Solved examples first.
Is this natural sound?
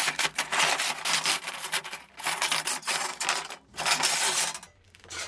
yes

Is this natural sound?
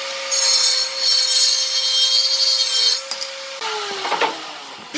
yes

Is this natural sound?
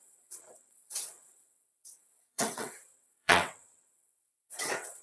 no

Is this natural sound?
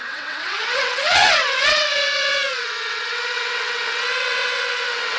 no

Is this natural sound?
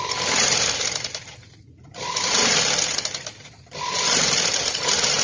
yes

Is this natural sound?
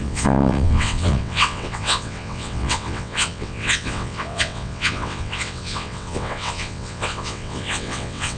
no